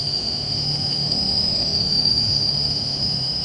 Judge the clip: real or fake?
fake